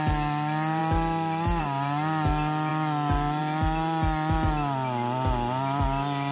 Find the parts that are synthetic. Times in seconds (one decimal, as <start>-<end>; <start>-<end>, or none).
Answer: none